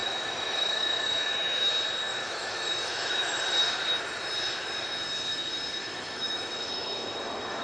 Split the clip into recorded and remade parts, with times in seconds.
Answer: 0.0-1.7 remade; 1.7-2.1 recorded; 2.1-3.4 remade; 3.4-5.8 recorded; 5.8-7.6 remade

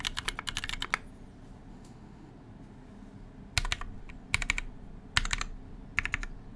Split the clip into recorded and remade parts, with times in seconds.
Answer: 0.0-1.7 recorded; 1.7-2.3 remade; 2.3-6.6 recorded

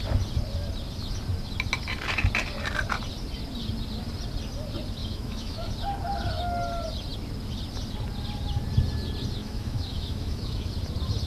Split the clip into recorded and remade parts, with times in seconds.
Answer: 0.0-5.0 recorded; 5.0-5.7 remade; 5.7-9.4 recorded; 9.4-10.7 remade; 10.7-11.3 recorded